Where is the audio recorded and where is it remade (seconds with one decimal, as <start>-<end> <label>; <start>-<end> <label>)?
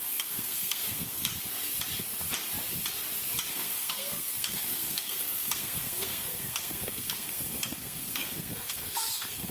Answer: 0.0-1.3 remade; 1.3-3.5 recorded; 3.5-9.5 remade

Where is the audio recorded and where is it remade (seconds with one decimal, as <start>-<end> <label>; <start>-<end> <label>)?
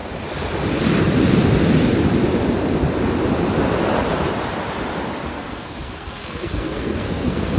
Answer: 0.0-5.3 recorded; 5.3-7.6 remade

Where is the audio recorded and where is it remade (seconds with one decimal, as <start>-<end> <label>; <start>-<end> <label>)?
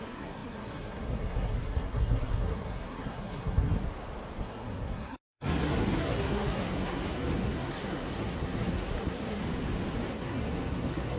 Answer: 0.0-3.8 remade; 3.8-4.4 recorded; 4.4-9.4 remade; 9.4-10.1 recorded; 10.1-11.2 remade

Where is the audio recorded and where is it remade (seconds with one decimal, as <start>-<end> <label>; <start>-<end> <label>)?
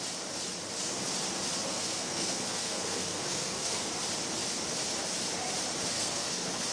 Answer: 0.0-1.7 recorded; 1.7-3.9 remade; 3.9-5.9 recorded; 5.9-6.7 remade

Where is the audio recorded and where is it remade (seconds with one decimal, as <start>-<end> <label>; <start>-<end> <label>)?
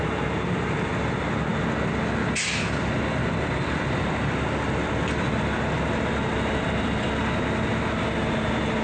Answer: 0.0-8.8 recorded